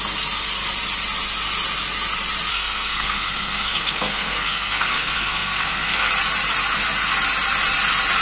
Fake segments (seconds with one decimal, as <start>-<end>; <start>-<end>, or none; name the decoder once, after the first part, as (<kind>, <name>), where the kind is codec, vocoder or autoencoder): 2.5-6.1 (codec, SNAC)